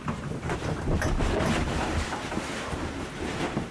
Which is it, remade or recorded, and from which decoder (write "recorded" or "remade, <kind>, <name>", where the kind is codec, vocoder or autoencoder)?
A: remade, vocoder, BigVGAN v2